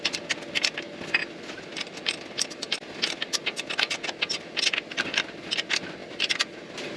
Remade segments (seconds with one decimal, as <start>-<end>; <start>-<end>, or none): none